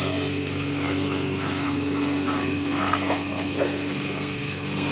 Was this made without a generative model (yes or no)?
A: no